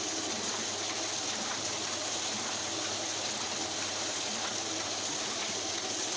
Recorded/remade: recorded